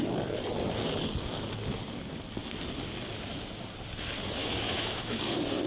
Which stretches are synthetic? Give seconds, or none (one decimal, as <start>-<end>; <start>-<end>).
4.4-5.2